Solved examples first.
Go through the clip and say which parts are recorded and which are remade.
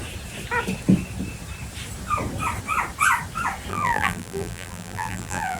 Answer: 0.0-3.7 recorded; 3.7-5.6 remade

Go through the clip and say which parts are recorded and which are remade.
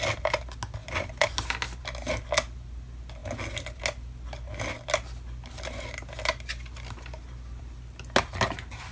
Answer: 0.0-8.9 recorded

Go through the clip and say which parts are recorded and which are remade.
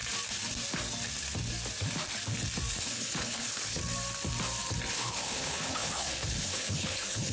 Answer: 0.0-2.8 recorded; 2.8-3.8 remade; 3.8-4.9 recorded; 4.9-7.3 remade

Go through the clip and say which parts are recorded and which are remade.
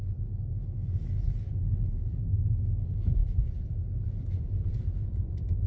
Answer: 0.0-1.7 recorded; 1.7-2.3 remade; 2.3-3.2 recorded; 3.2-5.7 remade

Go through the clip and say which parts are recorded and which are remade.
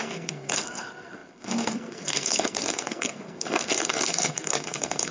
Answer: 0.0-5.1 remade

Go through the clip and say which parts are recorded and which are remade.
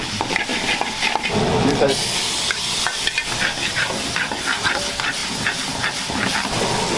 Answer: 0.0-7.0 recorded